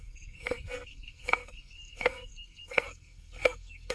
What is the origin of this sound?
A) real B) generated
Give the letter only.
B